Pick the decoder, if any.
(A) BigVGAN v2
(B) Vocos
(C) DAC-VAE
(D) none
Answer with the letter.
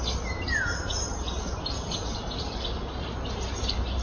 D